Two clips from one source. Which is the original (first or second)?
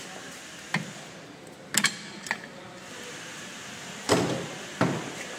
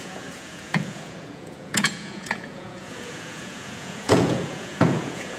first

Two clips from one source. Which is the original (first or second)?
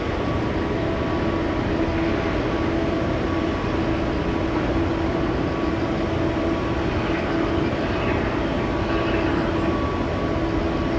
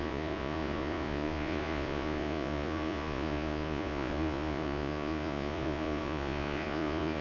first